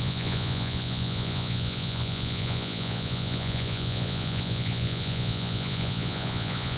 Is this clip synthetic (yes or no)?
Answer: yes